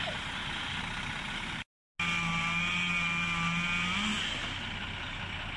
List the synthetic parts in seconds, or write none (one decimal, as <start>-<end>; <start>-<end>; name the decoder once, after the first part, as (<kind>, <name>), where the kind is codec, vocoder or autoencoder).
none